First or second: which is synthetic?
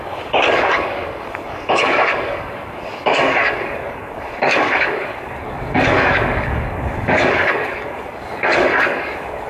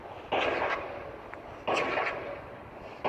first